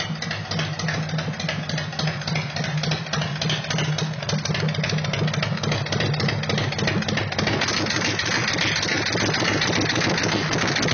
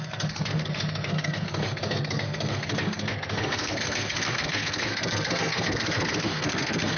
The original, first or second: first